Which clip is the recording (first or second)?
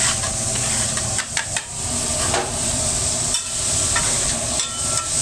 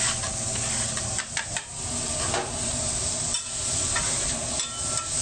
second